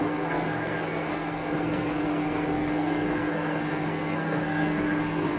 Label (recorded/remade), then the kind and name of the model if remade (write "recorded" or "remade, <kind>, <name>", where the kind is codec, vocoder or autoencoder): remade, codec, SNAC